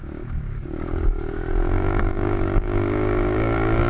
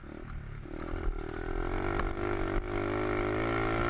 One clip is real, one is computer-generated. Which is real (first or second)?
second